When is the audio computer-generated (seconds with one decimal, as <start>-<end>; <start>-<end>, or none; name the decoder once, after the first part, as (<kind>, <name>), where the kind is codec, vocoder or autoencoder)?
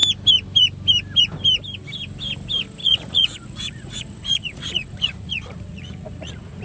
2.8-6.6 (vocoder, Vocos)